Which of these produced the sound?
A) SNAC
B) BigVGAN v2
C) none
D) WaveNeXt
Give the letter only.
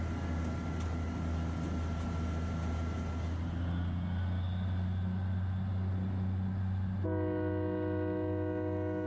C